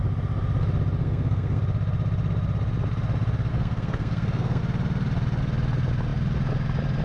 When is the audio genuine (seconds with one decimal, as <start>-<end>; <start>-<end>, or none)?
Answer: 0.0-1.0; 1.6-3.5; 4.6-7.0